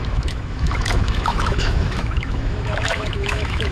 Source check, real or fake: fake